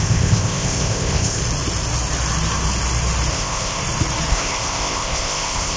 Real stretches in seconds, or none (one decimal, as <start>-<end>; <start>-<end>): 1.4-3.3; 3.8-4.3